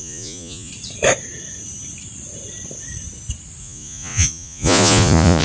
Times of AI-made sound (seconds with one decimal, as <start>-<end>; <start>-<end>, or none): 0.0-0.7; 3.6-5.4